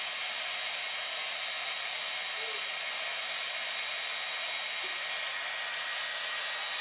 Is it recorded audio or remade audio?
recorded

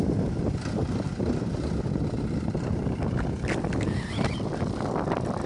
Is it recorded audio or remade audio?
remade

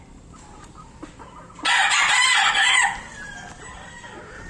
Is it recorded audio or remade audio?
remade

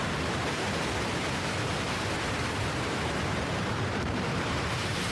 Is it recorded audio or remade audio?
remade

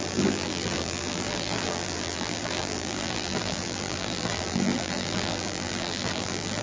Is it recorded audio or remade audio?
remade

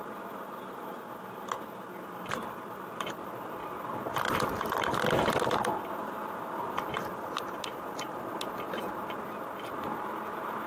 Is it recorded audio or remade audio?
recorded